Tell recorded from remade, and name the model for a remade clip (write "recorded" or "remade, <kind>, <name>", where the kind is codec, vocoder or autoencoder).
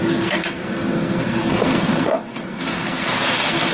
remade, codec, SNAC